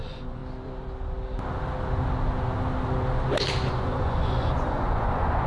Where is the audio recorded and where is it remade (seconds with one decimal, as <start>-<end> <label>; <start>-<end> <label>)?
0.0-0.4 remade; 0.4-3.7 recorded; 3.7-5.5 remade